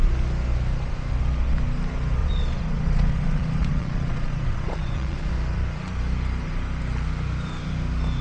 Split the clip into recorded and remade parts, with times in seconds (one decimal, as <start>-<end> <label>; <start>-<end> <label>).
0.0-2.2 recorded; 2.2-5.3 remade; 5.3-8.2 recorded